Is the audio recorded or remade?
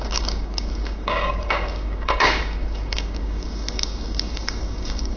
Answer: remade